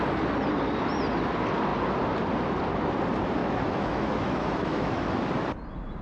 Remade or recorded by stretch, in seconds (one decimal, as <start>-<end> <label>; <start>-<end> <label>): 0.0-3.4 recorded; 3.4-5.2 remade; 5.2-6.0 recorded